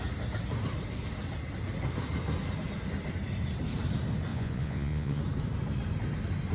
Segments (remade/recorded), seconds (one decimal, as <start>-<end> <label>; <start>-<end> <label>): 0.0-4.3 recorded; 4.3-5.2 remade; 5.2-6.5 recorded